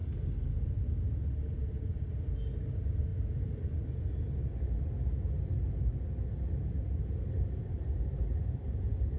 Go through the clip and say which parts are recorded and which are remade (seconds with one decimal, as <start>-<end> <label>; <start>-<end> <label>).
0.0-9.2 recorded